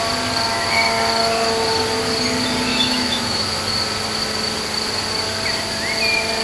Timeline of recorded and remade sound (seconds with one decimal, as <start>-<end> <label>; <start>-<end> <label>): 0.0-2.7 recorded; 2.7-3.6 remade; 3.6-6.4 recorded